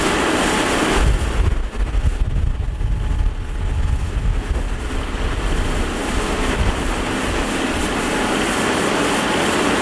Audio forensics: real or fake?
real